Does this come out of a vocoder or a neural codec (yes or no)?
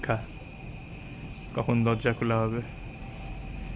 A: no